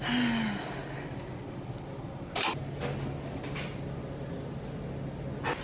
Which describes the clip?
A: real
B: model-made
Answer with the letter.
A